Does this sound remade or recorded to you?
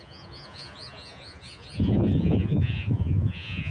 remade